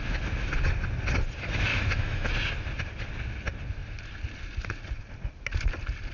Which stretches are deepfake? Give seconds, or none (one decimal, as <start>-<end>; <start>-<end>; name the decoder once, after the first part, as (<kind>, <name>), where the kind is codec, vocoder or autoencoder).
1.7-2.3 (autoencoder, DAC-VAE)